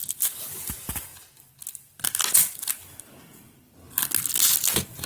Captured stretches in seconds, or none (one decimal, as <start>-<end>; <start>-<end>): 0.0-5.1